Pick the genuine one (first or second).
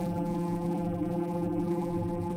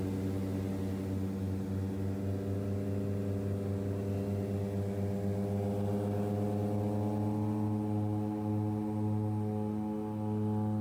second